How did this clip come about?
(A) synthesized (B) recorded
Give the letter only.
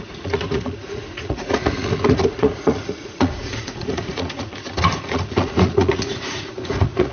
A